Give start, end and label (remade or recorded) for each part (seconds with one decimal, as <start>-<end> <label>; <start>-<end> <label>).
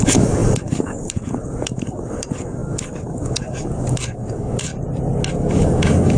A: 0.0-4.7 remade; 4.7-5.3 recorded; 5.3-6.2 remade